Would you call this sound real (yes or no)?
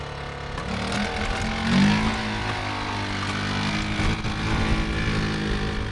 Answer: yes